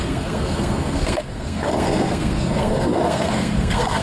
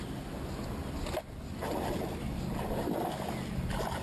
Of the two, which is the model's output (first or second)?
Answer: first